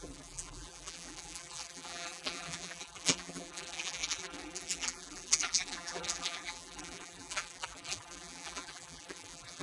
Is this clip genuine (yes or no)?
no